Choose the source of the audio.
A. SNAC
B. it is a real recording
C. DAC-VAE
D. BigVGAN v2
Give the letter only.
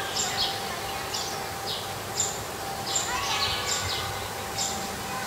B